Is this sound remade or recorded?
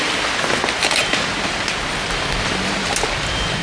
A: recorded